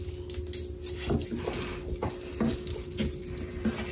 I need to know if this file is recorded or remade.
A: recorded